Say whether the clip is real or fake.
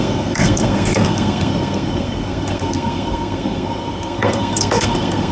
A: fake